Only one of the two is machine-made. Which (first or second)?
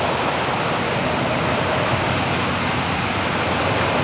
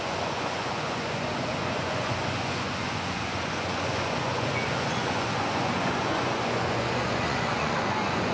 second